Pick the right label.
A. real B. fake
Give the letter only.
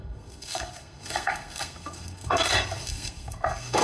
B